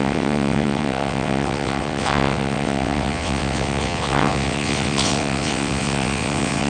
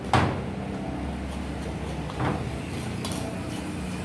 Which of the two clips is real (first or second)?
second